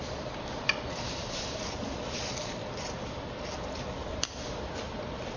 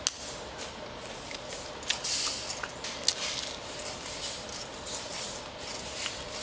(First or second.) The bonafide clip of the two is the second